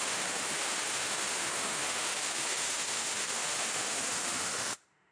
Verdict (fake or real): fake